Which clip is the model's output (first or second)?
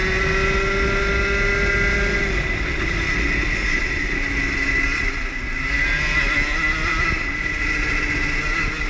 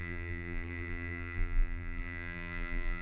second